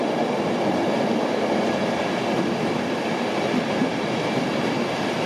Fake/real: fake